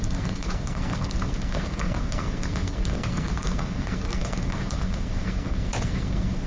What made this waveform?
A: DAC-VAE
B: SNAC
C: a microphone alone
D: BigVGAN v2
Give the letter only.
B